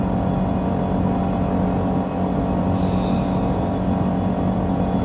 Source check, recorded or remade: recorded